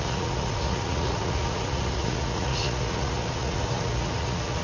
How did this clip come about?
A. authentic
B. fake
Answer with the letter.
B